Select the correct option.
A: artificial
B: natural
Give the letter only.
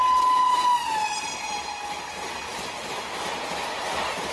B